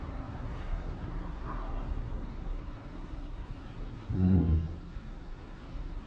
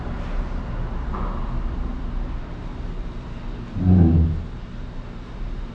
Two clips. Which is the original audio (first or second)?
second